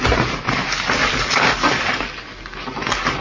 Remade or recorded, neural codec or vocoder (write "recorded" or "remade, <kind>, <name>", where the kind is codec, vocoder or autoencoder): recorded